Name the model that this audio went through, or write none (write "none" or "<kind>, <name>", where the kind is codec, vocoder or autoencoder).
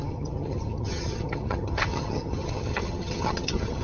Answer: vocoder, HiFi-GAN